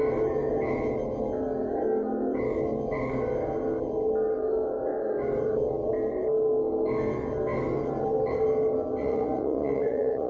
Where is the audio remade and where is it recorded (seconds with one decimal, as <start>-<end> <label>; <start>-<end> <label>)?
0.0-9.0 recorded; 9.0-10.3 remade